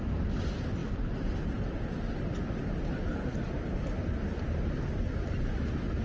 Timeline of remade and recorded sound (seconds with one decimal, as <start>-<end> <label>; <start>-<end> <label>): 0.0-6.0 recorded